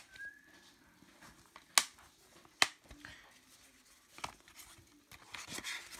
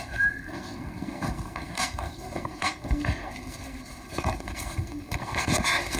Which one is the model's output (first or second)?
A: second